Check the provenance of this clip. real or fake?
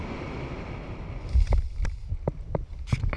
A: real